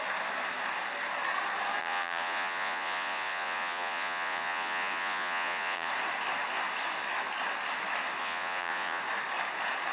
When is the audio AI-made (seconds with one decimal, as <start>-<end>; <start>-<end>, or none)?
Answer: 1.8-5.9; 8.2-9.0